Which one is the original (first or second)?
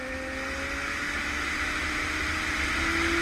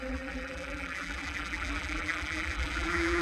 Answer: first